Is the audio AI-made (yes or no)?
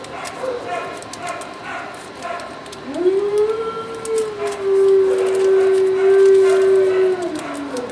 no